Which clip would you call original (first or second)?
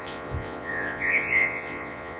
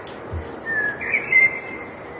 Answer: second